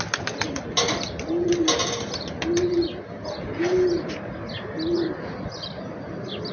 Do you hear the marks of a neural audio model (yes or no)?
no